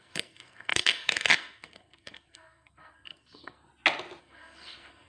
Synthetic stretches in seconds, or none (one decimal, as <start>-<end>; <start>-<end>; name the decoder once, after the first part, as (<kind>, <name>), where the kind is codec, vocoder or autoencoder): 0.0-3.7 (codec, SNAC); 4.2-5.1